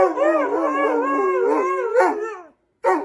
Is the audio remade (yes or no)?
no